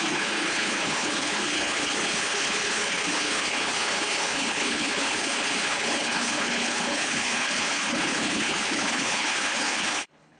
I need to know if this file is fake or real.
fake